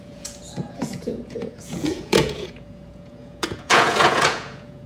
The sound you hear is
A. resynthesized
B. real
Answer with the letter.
A